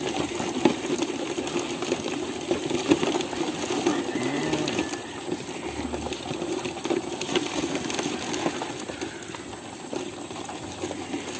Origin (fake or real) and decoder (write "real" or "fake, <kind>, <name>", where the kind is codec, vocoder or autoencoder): real